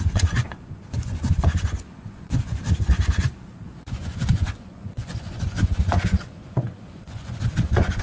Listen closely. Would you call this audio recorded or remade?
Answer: remade